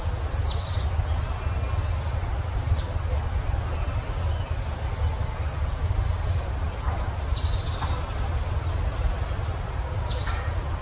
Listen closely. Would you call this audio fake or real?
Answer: real